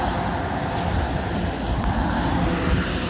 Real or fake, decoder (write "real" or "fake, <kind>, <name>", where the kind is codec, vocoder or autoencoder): real